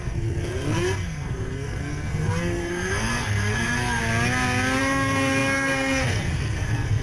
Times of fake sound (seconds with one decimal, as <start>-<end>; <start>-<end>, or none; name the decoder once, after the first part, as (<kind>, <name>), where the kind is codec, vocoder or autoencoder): 0.0-4.0 (codec, SNAC); 4.8-7.0